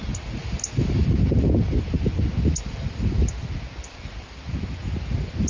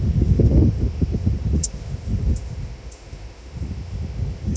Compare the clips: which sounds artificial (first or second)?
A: second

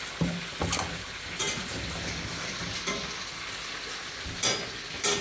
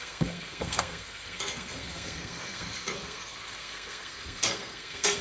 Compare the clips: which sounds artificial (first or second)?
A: second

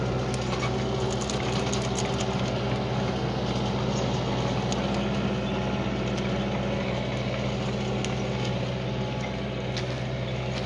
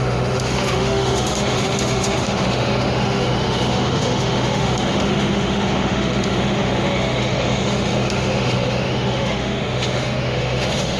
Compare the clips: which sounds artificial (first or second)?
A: second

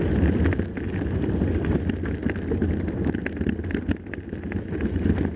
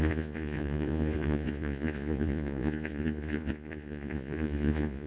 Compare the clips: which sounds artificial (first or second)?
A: second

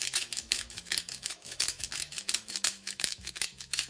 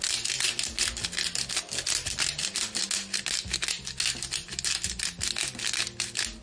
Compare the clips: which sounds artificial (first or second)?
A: first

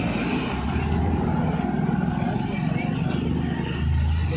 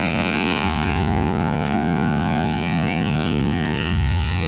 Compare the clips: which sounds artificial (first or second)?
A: second